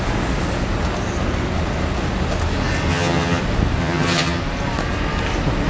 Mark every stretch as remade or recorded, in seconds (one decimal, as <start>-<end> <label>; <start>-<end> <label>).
0.0-2.9 recorded; 2.9-3.4 remade; 3.4-3.8 recorded; 3.8-4.4 remade; 4.4-5.7 recorded

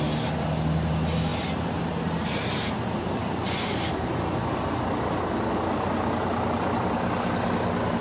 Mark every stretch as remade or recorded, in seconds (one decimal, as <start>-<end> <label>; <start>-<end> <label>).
0.0-8.0 recorded